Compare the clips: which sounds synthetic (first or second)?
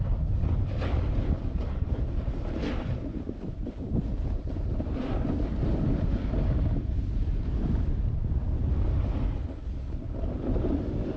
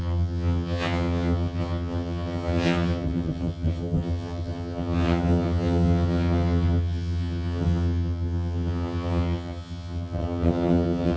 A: second